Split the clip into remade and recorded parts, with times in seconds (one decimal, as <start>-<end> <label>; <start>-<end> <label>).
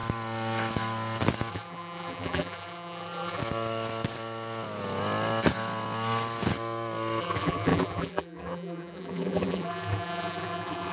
0.0-1.5 recorded; 1.5-3.4 remade; 3.4-7.2 recorded; 7.2-10.9 remade